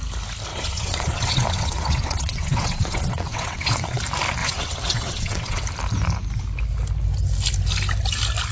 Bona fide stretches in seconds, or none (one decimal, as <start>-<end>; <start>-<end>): 0.0-0.5; 4.0-4.4; 5.6-8.5